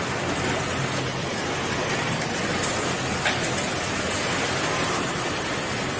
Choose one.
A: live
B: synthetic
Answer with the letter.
A